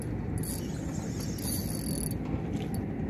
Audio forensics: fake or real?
real